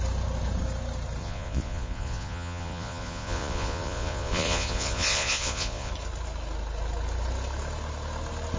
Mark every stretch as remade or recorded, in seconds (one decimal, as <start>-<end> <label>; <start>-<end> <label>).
0.0-1.2 recorded; 1.2-5.9 remade; 5.9-8.6 recorded